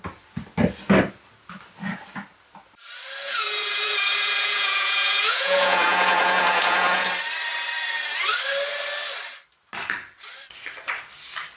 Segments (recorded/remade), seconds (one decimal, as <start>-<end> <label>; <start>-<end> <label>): 0.0-3.2 recorded; 3.2-7.1 remade; 7.1-11.6 recorded